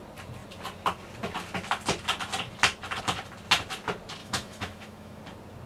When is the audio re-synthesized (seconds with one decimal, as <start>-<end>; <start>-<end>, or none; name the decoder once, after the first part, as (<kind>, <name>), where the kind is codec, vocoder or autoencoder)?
4.2-5.2 (autoencoder, DAC-VAE)